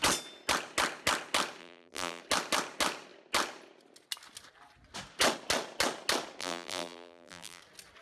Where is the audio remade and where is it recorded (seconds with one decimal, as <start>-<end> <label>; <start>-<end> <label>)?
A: 0.0-1.6 recorded; 1.6-2.2 remade; 2.2-6.4 recorded; 6.4-7.6 remade; 7.6-8.0 recorded